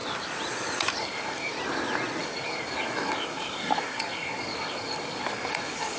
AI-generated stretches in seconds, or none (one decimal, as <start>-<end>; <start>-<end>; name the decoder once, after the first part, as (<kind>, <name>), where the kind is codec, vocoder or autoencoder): 1.0-1.5 (codec, DAC); 2.2-6.0